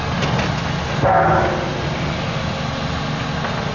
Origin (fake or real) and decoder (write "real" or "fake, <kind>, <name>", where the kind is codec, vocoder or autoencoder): real